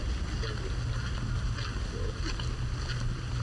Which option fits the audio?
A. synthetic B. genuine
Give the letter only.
B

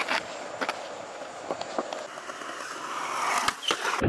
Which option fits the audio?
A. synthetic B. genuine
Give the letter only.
B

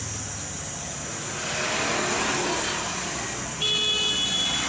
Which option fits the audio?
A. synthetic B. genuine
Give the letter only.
B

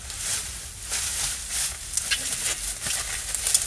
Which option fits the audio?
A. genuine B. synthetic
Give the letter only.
A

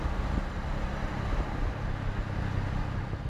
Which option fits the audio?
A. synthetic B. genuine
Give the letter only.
B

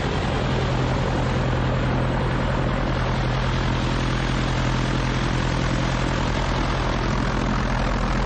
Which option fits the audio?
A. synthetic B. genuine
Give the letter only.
B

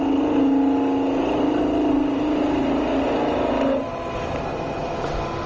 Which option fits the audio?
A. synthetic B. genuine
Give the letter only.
B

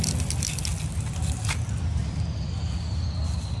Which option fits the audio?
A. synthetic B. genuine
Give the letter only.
B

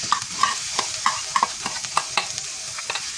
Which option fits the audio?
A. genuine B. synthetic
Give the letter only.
B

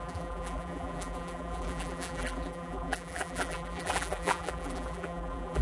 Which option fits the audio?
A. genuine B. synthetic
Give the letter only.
B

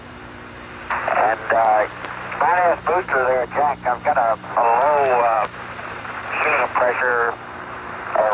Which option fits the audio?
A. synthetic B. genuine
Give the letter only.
A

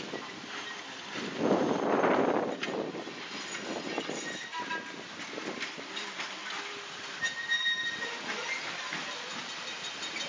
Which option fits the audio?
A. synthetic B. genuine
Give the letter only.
A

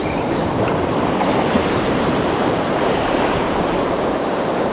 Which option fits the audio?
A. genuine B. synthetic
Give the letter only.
B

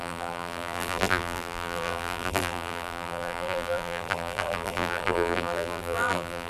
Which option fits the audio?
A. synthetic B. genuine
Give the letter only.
A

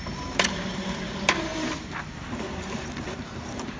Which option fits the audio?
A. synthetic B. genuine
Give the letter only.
A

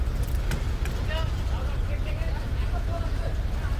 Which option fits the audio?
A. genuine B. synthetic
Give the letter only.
A